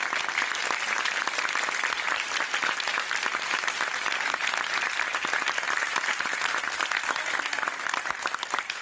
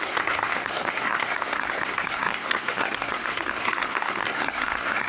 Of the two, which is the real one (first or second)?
first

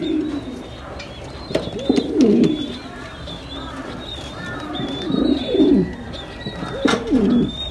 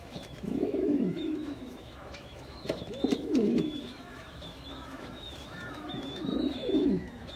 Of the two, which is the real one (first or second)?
first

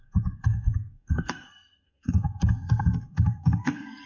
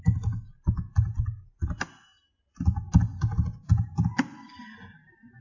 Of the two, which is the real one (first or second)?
second